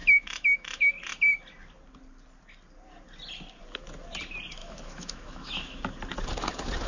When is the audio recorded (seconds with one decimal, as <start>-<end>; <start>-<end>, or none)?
0.8-4.6; 5.8-6.9